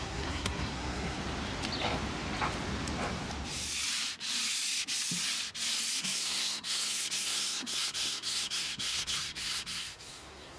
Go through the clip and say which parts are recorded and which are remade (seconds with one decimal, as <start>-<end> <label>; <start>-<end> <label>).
0.0-1.2 remade; 1.2-6.0 recorded; 6.0-10.6 remade